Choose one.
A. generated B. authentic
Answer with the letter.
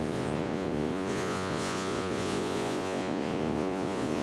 A